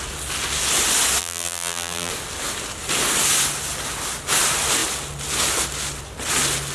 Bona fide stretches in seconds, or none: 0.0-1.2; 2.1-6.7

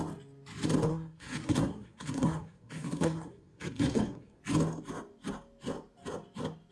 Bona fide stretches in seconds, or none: 0.0-0.9; 4.4-6.7

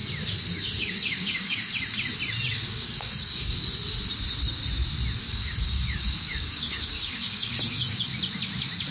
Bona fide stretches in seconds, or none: 0.0-0.6; 1.7-2.5; 3.6-5.2; 8.1-8.9